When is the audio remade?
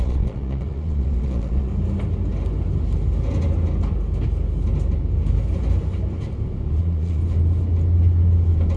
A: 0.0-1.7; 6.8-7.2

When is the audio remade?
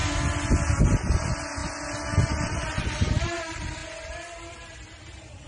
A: 0.6-1.6; 2.5-3.8; 4.5-5.5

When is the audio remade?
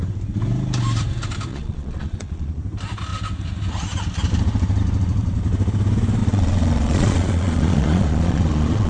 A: 1.5-2.6; 6.2-8.9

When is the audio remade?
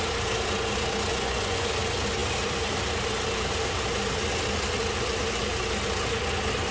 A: 1.1-1.7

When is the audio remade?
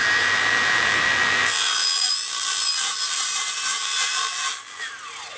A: 0.0-3.2; 3.7-4.9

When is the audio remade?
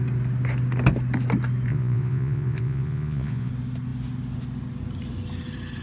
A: 1.7-3.5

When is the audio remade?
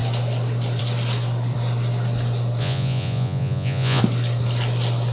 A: 2.6-4.0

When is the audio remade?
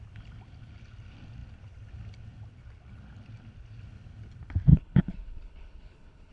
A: 4.7-6.3